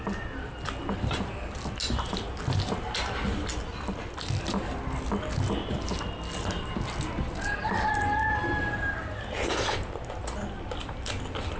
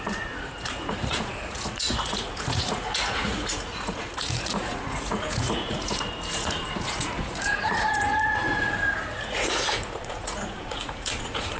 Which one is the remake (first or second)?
second